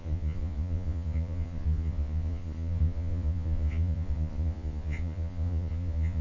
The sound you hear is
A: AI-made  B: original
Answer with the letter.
A